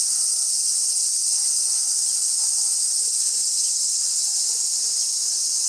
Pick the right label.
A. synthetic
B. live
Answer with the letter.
B